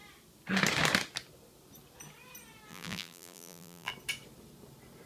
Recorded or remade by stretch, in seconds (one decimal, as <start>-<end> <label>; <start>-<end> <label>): 0.0-2.7 recorded; 2.7-3.9 remade; 3.9-5.1 recorded